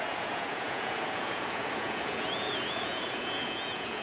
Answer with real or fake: fake